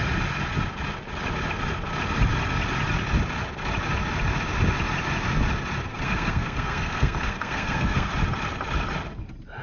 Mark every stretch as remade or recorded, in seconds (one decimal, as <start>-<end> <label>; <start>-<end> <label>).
0.0-5.9 recorded; 5.9-8.1 remade; 8.1-9.6 recorded